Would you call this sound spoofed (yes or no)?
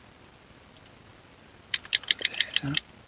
no